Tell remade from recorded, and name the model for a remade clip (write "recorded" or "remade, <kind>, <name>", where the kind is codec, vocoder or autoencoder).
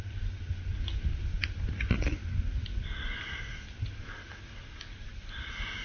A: recorded